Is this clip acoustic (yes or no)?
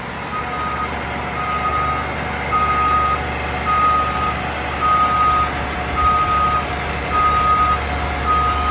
yes